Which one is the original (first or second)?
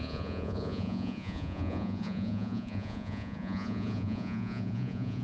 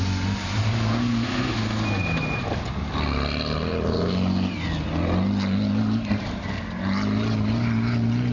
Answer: second